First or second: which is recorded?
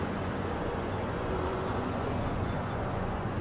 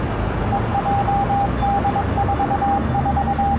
second